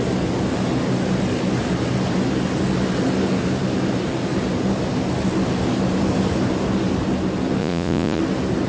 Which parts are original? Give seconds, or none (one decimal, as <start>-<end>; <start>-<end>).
0.0-7.6; 8.2-8.7